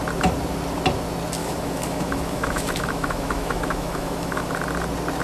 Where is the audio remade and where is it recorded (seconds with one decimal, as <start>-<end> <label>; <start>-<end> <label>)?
0.0-1.4 recorded; 1.4-4.5 remade; 4.5-5.2 recorded